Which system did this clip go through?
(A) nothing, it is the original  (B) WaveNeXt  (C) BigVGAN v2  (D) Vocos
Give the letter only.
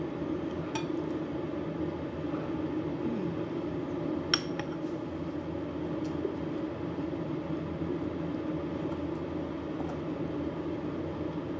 A